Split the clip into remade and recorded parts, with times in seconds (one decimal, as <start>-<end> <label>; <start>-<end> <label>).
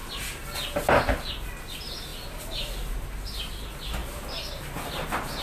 0.0-5.4 recorded